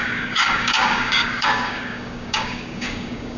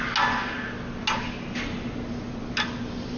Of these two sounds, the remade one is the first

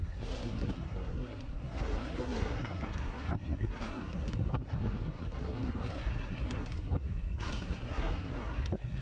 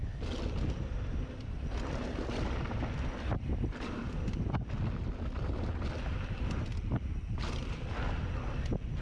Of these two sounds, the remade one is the first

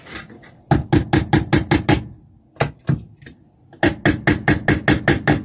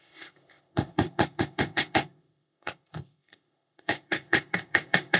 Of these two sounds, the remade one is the second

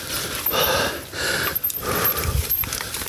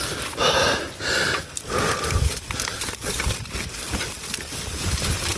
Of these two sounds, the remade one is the first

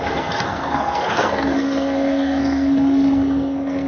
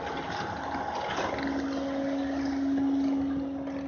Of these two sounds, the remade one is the first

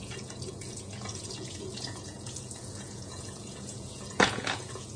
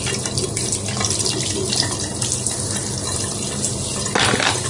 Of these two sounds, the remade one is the first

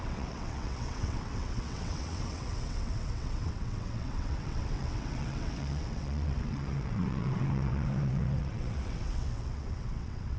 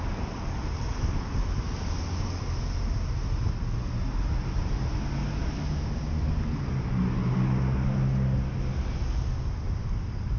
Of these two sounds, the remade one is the first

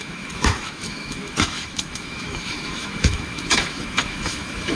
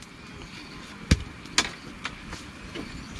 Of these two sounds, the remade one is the first